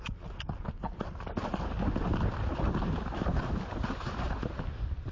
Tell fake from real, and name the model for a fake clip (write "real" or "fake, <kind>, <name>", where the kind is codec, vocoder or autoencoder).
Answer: real